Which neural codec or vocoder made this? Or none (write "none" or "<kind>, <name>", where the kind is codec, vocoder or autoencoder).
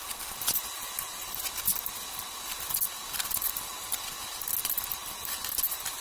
none